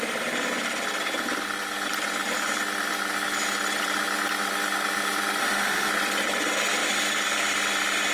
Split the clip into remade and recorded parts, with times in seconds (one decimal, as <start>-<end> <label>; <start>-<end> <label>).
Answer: 0.0-5.4 recorded; 5.4-5.9 remade; 5.9-8.1 recorded